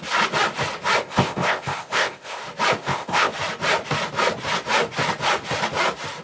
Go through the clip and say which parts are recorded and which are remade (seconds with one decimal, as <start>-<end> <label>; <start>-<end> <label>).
0.0-1.0 recorded; 1.0-2.4 remade; 2.4-2.8 recorded; 2.8-3.3 remade; 3.3-6.2 recorded